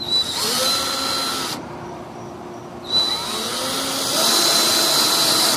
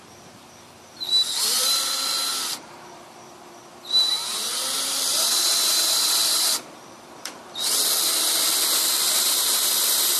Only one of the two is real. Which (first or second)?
first